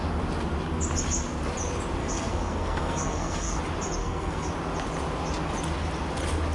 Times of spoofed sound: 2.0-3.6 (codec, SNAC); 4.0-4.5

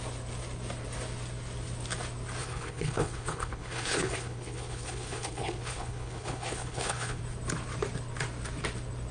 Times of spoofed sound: 2.4-7.2 (codec, HILCodec)

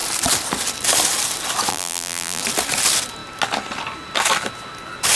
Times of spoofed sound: 1.7-2.4 (vocoder, BigVGAN v2)

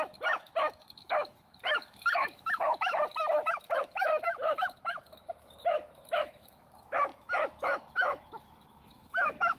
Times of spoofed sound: 0.0-9.6 (autoencoder, DAC-VAE)

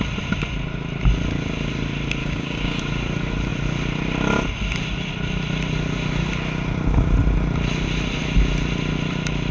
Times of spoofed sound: 2.2-2.8 (codec, DAC)

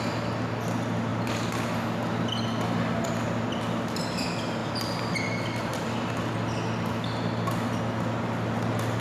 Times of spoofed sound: 4.6-5.6 (vocoder, BigVGAN v2)